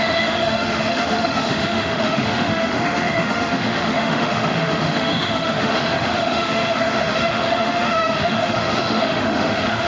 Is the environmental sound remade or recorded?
remade